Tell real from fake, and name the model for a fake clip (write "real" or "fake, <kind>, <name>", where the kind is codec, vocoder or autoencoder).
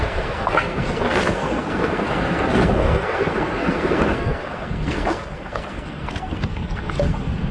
fake, codec, SNAC